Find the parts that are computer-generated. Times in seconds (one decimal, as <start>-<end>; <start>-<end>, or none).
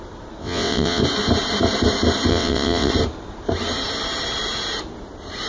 0.4-1.0; 2.3-2.9